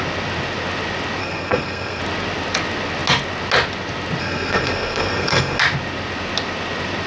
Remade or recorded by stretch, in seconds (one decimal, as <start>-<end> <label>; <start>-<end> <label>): 0.0-1.2 recorded; 1.2-2.0 remade; 2.0-4.2 recorded; 4.2-5.6 remade; 5.6-7.1 recorded